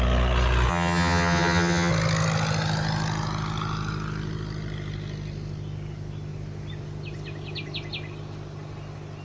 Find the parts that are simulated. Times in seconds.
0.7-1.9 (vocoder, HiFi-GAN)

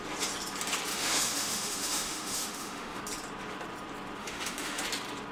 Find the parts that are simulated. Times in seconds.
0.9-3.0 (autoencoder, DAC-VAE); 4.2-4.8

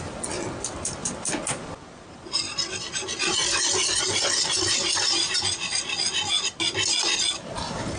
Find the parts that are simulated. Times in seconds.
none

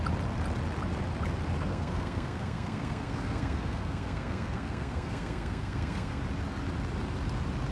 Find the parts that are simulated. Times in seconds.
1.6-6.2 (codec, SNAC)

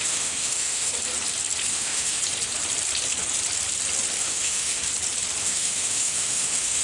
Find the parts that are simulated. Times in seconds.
0.0-0.9 (autoencoder, DAC-VAE); 1.7-2.2; 4.2-4.8; 5.4-6.8